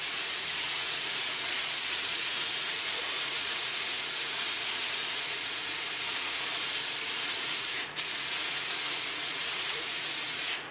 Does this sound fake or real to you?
fake